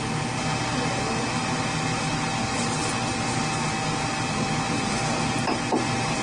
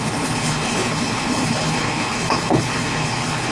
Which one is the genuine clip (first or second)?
first